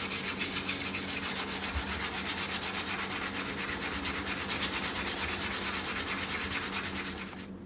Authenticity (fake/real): real